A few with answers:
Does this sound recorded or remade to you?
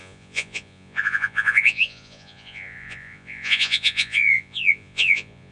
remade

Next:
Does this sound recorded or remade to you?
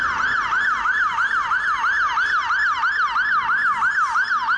recorded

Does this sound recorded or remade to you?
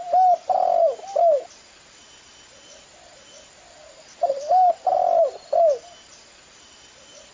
recorded